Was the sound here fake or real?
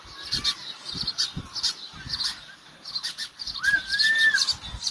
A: real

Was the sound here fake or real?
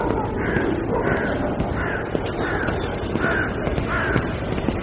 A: real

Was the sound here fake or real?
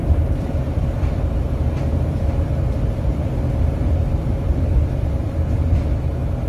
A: fake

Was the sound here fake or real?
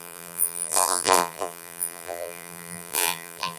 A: fake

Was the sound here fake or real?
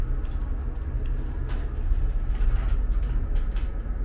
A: real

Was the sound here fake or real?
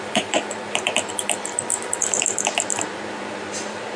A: fake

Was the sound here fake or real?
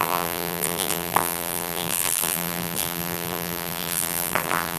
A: fake